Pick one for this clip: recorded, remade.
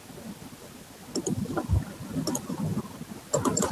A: recorded